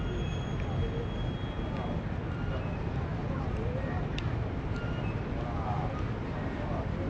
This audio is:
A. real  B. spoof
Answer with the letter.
A